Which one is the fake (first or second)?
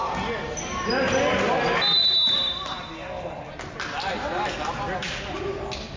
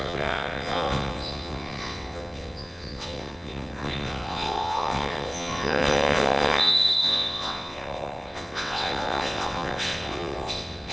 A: second